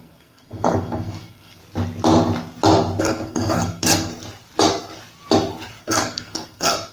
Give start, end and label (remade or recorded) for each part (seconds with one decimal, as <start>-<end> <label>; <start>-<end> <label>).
0.0-1.6 remade; 1.6-3.0 recorded; 3.0-4.1 remade; 4.1-5.8 recorded; 5.8-6.9 remade